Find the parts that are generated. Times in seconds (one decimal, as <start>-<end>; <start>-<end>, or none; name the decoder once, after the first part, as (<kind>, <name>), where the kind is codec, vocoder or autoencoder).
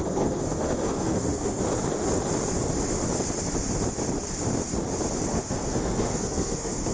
0.0-1.6 (codec, SNAC); 5.3-6.9